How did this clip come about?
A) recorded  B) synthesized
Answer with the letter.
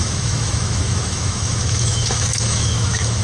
B